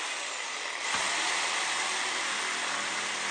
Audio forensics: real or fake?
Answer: real